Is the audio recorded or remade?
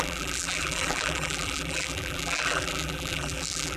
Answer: remade